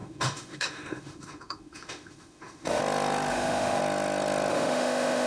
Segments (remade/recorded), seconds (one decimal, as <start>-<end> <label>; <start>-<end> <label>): 0.0-2.8 remade; 2.8-3.3 recorded; 3.3-3.8 remade; 3.8-4.5 recorded; 4.5-5.3 remade